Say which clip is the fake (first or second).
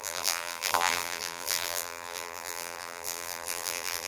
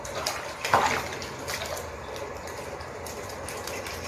first